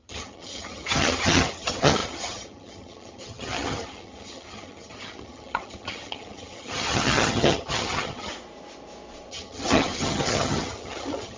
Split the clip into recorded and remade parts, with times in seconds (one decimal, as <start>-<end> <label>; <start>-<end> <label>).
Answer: 0.0-8.3 remade; 8.3-9.3 recorded; 9.3-11.4 remade